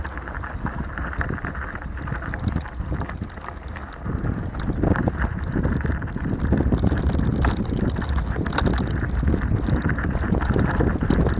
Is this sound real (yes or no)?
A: yes